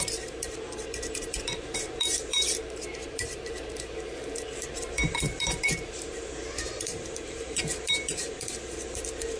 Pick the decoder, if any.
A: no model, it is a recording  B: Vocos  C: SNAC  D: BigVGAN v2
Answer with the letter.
D